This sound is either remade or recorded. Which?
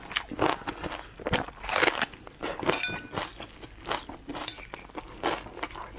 recorded